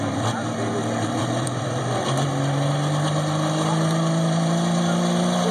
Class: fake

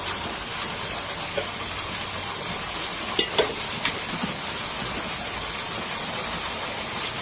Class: real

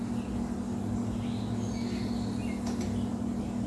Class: real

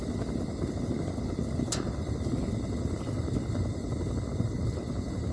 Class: real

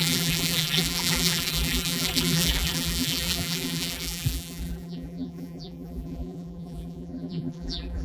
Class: fake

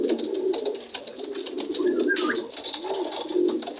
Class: real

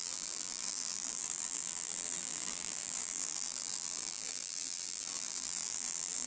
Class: fake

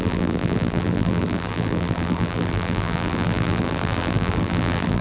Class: fake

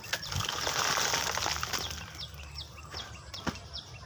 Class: real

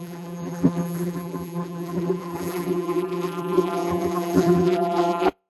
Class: fake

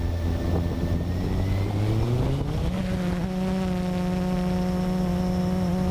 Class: real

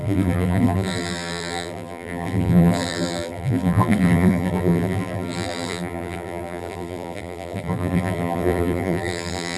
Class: fake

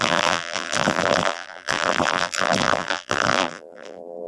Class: fake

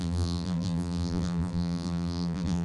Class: fake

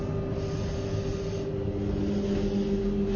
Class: real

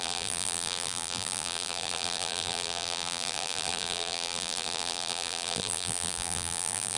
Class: fake